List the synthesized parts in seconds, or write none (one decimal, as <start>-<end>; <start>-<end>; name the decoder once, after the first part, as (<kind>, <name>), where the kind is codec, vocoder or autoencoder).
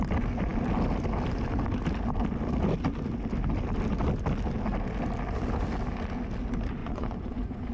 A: 6.8-7.7 (vocoder, Vocos)